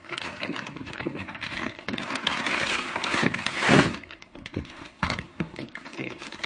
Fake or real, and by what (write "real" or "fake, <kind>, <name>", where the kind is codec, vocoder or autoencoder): fake, codec, SNAC